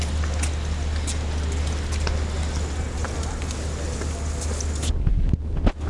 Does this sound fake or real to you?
real